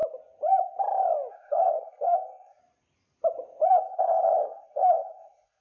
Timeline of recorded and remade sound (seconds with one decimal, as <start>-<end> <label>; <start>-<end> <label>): 0.0-1.3 recorded; 1.3-2.6 remade; 2.6-3.7 recorded; 3.7-5.6 remade